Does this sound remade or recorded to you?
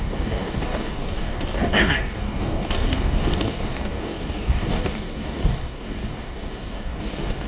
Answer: remade